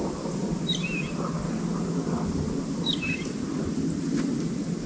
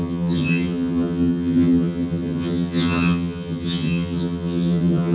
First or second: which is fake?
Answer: second